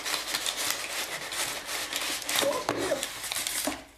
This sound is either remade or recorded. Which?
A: recorded